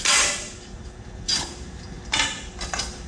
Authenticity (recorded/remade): remade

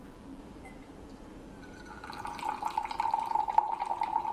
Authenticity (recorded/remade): remade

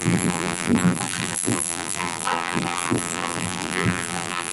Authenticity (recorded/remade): remade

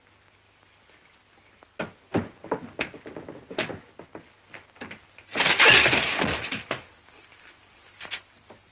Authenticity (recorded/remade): recorded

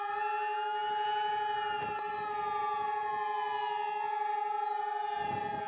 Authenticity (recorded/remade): recorded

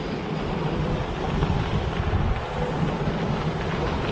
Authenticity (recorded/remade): recorded